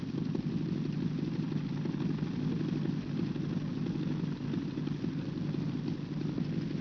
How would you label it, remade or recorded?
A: recorded